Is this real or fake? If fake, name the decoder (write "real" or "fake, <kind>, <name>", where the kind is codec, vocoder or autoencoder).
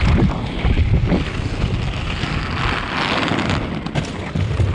real